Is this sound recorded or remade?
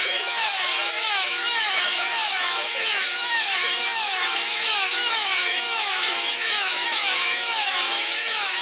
remade